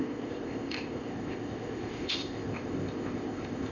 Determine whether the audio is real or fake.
fake